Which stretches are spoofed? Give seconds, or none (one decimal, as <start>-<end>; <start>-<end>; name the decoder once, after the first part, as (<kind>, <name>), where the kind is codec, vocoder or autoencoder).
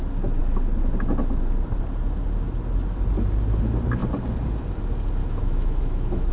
5.2-6.3 (autoencoder, DAC-VAE)